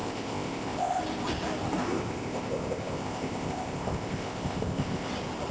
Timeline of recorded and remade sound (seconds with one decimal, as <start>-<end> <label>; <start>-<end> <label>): 0.0-1.0 remade; 1.0-1.8 recorded; 1.8-5.1 remade; 5.1-5.5 recorded